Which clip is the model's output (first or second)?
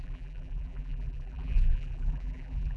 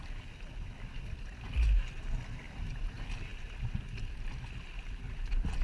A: first